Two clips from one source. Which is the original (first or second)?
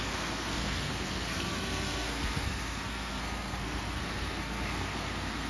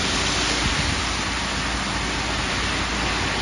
second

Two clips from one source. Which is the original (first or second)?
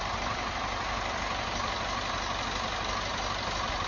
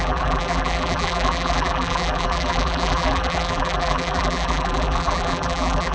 first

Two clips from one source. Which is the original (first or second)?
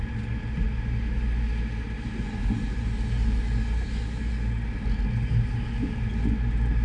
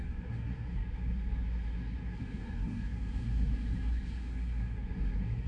first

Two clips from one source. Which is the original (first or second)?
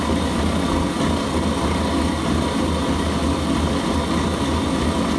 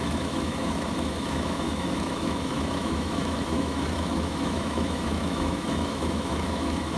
first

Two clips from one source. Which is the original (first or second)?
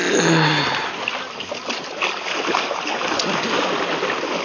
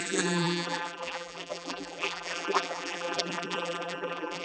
first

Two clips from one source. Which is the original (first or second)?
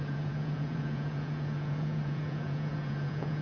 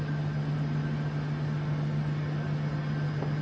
second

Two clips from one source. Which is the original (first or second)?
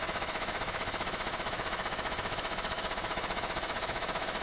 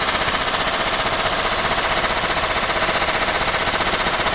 second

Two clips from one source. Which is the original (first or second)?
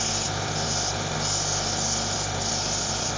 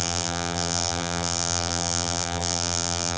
first